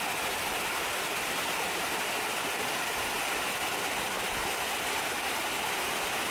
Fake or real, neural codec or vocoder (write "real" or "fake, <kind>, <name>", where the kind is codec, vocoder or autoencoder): fake, vocoder, BigVGAN v2